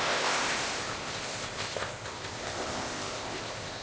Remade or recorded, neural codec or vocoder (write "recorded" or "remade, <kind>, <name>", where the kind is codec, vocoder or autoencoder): remade, codec, ZipCodec